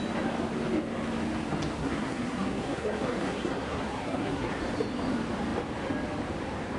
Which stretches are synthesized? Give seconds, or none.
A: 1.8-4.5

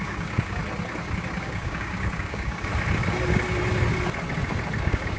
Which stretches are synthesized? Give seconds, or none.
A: 0.0-0.6; 1.4-2.7; 4.8-5.2

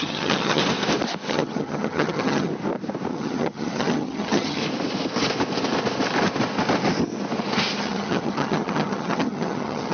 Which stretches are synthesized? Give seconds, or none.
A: 0.0-0.6; 1.3-2.5; 3.1-4.6; 7.8-9.9

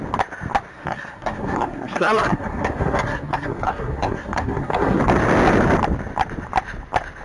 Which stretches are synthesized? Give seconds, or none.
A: 0.7-5.0

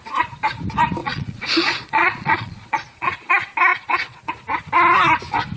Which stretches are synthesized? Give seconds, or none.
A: 1.0-3.3; 3.7-4.3

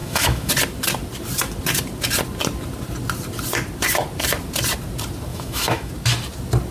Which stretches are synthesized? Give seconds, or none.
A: 0.0-0.5; 5.3-5.9

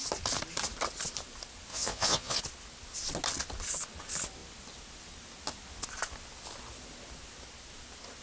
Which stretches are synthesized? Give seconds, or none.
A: 1.7-2.4

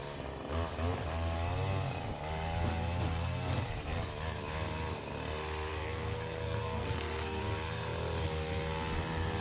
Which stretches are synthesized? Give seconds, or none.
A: 5.7-7.4